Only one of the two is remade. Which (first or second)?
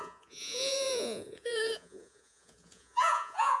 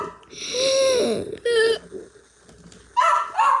first